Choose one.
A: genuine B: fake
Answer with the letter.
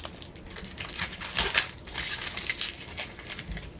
A